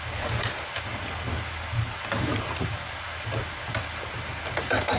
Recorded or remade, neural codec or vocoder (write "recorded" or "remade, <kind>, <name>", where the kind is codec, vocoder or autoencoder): recorded